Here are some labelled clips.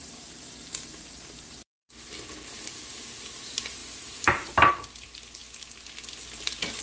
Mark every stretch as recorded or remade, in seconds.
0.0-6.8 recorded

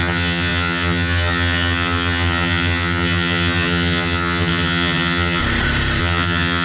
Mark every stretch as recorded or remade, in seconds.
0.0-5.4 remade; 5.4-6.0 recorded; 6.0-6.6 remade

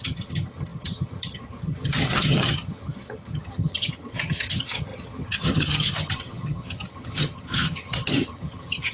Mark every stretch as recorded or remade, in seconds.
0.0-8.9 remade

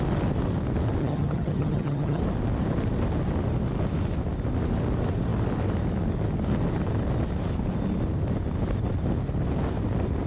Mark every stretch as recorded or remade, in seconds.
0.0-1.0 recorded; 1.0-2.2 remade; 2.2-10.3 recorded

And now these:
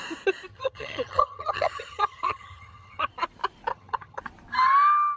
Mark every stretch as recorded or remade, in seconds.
0.0-0.5 recorded; 0.5-3.1 remade; 3.1-3.7 recorded; 3.7-4.2 remade; 4.2-5.2 recorded

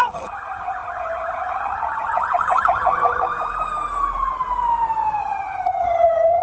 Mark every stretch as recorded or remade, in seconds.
0.0-3.3 remade; 3.3-5.2 recorded; 5.2-6.4 remade

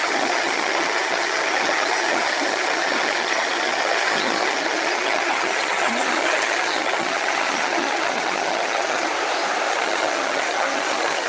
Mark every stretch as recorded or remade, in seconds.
0.0-9.1 remade; 9.1-9.7 recorded; 9.7-11.3 remade

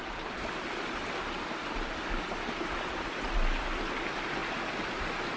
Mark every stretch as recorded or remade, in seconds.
0.0-5.4 recorded